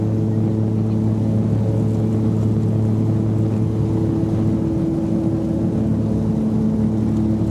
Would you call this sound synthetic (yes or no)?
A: no